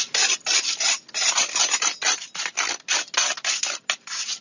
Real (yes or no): yes